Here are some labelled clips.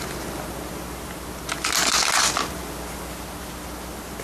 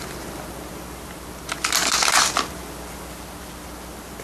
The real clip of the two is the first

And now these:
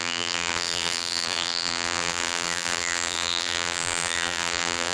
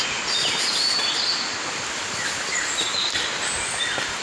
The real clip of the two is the second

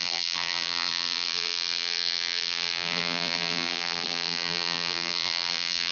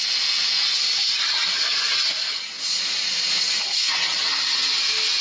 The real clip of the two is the second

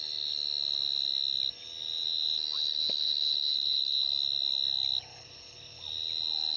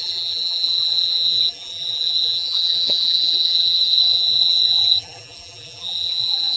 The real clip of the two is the first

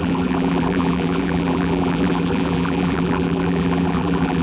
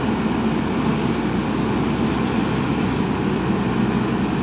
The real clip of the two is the second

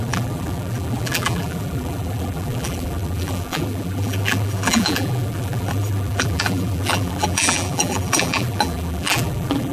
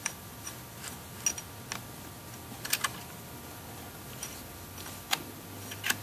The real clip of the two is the second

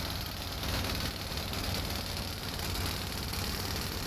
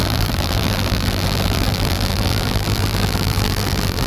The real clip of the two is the first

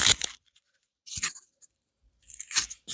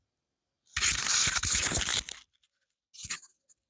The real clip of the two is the second